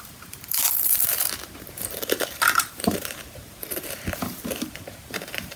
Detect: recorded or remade remade